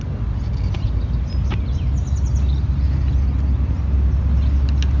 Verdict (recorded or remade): recorded